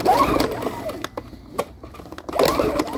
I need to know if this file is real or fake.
real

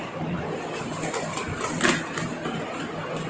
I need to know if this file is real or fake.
real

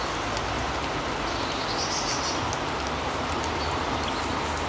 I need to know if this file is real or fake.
real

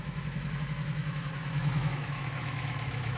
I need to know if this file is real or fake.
fake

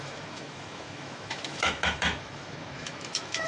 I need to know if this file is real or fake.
fake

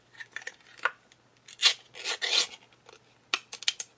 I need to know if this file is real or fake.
real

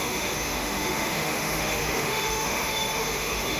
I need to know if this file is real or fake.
fake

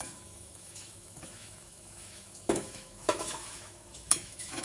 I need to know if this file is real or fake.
fake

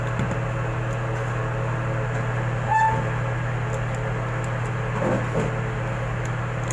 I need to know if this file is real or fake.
real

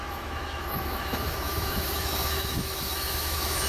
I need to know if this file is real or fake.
fake